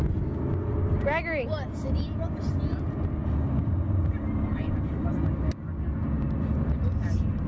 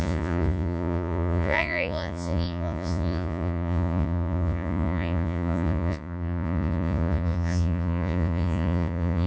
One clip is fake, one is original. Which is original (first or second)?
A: first